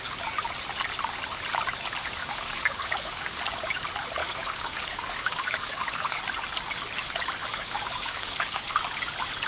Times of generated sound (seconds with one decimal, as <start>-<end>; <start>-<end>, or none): 2.0-3.4; 4.2-6.2; 7.4-8.6